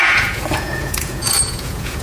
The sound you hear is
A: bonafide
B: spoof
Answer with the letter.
B